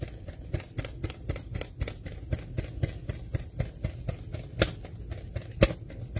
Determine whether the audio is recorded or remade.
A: recorded